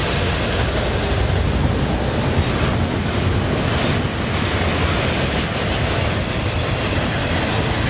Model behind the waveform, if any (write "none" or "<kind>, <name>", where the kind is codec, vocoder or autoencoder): none